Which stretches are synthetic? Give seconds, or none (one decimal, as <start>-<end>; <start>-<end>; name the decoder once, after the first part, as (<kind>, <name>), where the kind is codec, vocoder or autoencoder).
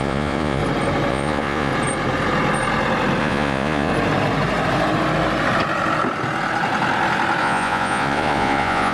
0.0-0.6 (vocoder, Vocos); 1.1-1.7; 3.2-3.9; 7.4-8.9